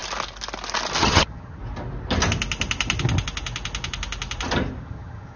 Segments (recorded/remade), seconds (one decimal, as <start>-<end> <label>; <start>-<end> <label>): 0.0-1.0 recorded; 1.0-1.6 remade; 1.6-4.8 recorded; 4.8-5.4 remade